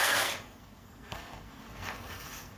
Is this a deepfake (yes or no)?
yes